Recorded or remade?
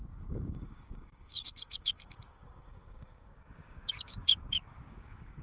remade